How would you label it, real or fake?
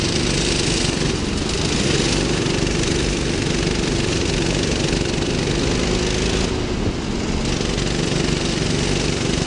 real